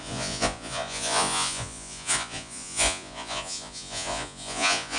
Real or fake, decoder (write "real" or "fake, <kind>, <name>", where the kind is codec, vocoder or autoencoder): fake, vocoder, Vocos